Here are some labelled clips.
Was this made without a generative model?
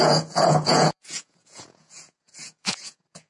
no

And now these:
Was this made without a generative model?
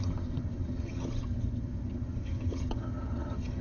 no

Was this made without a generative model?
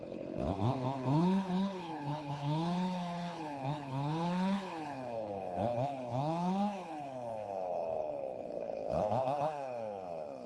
no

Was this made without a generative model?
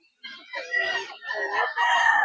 yes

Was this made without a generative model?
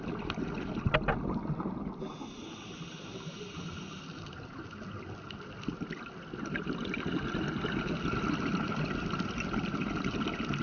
yes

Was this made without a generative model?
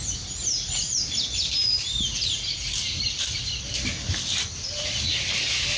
yes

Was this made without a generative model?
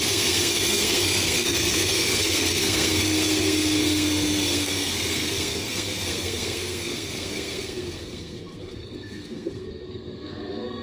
no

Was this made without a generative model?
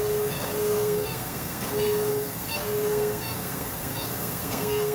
no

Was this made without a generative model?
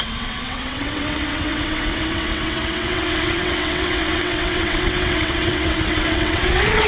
no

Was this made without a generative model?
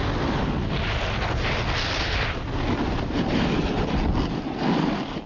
yes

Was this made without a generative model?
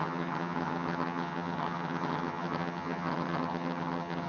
no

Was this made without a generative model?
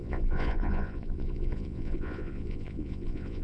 no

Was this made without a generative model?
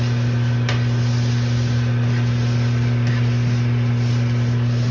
yes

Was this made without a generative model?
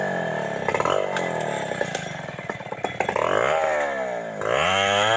yes